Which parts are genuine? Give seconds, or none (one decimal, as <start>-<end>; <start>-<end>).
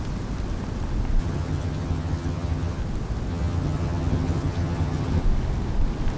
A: 0.0-1.2; 2.8-3.3; 5.2-6.2